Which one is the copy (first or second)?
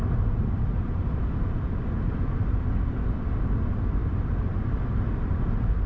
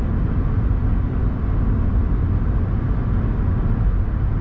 first